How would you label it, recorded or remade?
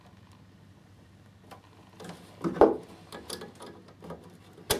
recorded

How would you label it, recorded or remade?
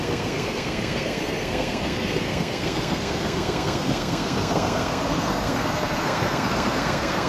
remade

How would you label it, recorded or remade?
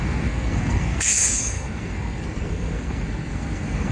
remade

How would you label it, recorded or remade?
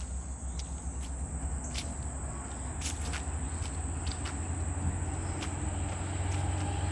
recorded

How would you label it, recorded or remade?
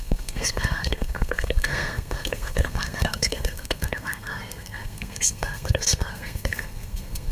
remade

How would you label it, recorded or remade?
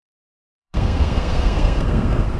remade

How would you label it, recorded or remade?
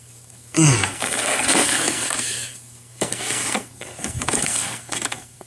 remade